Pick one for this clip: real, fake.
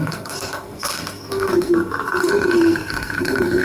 fake